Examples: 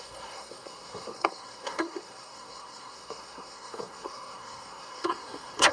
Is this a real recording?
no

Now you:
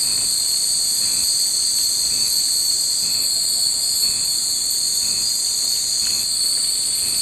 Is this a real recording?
yes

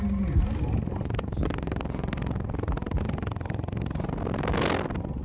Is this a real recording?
yes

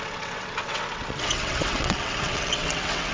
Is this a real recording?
no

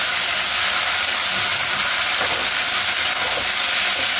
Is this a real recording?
yes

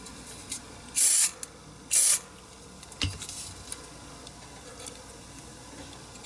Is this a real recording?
yes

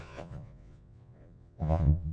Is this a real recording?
no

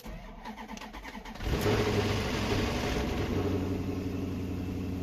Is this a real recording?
yes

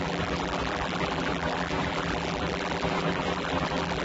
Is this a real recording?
no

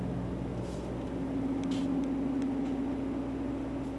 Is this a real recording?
yes